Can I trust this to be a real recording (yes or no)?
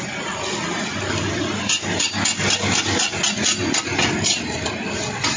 yes